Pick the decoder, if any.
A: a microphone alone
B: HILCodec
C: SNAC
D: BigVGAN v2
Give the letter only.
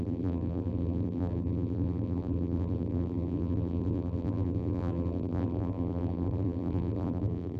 D